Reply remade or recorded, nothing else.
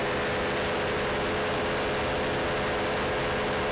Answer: recorded